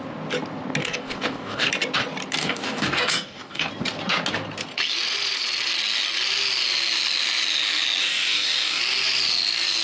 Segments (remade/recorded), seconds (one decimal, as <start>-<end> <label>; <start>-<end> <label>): 0.0-0.8 recorded; 0.8-1.7 remade; 1.7-2.4 recorded; 2.4-3.7 remade; 3.7-8.0 recorded; 8.0-8.8 remade; 8.8-9.8 recorded